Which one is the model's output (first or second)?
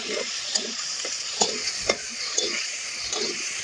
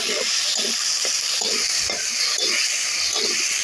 first